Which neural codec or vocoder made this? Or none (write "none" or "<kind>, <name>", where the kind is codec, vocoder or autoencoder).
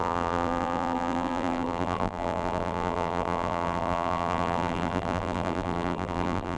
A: vocoder, BigVGAN v2